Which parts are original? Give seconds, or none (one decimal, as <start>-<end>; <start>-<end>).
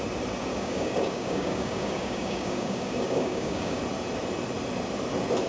0.0-0.5; 3.8-5.5